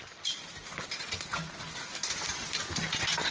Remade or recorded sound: recorded